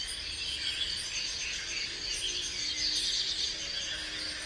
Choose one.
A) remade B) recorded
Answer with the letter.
B